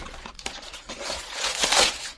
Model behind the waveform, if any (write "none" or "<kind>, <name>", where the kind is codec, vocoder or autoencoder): vocoder, Vocos